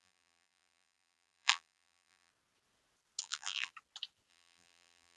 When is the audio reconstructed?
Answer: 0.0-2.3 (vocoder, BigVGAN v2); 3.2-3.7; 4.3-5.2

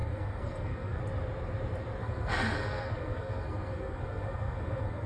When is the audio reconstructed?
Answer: 0.0-1.0 (codec, SNAC); 2.0-5.1